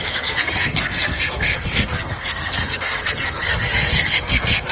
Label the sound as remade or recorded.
remade